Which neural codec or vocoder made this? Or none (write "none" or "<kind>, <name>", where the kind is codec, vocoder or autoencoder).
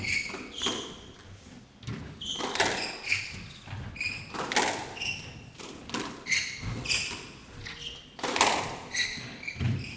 none